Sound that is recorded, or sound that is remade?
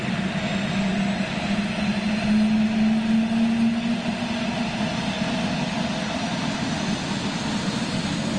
recorded